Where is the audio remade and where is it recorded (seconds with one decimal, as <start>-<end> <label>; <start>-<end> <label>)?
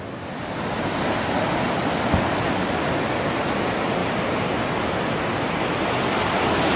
0.0-6.8 recorded